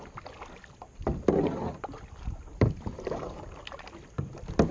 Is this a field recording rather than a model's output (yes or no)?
yes